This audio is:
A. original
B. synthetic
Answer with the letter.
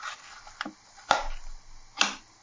A